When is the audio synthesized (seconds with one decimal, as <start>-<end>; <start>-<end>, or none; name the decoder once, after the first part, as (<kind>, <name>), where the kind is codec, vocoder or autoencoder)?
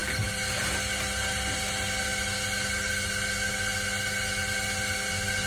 none